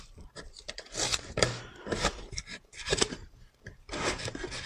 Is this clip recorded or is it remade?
remade